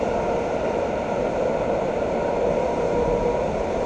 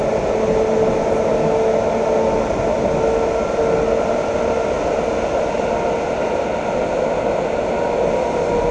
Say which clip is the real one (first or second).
second